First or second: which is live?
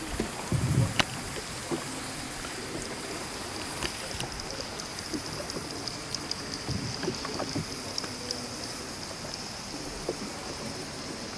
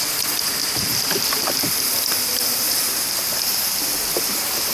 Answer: first